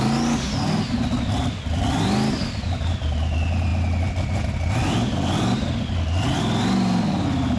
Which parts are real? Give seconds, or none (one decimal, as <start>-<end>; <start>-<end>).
0.0-7.6